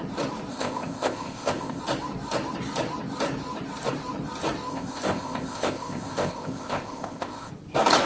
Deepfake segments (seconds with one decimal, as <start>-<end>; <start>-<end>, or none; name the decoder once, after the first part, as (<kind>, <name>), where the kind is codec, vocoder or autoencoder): 0.5-1.8 (codec, ZipCodec); 4.7-7.5